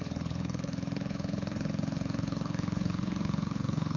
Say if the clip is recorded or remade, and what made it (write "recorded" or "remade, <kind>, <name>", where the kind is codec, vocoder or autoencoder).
remade, codec, HILCodec